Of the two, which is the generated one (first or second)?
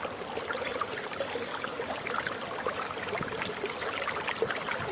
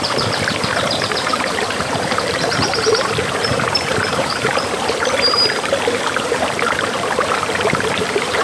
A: second